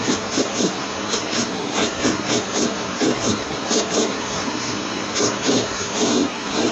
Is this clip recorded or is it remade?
remade